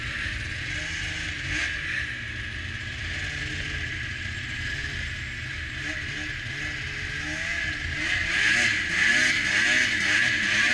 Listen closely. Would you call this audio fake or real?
real